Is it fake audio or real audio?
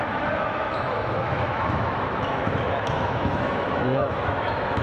fake